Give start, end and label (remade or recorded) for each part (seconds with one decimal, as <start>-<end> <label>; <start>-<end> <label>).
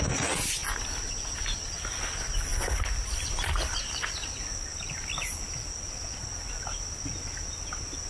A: 0.0-8.1 recorded